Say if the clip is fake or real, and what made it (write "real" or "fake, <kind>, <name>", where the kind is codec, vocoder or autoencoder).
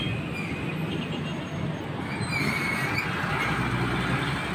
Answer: real